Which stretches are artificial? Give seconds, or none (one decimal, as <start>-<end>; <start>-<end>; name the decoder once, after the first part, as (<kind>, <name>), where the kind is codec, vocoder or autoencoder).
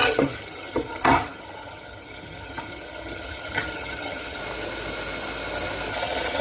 0.0-4.4 (vocoder, HiFi-GAN); 5.9-6.4